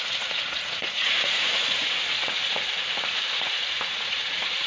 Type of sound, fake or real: fake